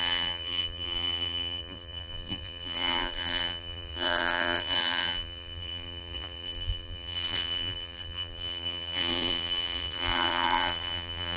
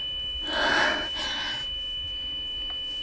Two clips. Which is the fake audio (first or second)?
first